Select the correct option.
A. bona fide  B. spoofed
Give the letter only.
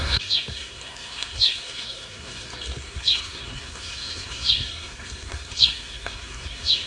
B